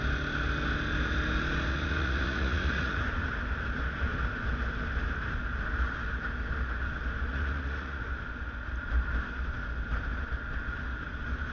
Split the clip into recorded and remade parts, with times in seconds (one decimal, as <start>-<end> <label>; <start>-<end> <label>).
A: 0.0-1.7 recorded; 1.7-3.0 remade; 3.0-7.3 recorded; 7.3-8.0 remade; 8.0-11.5 recorded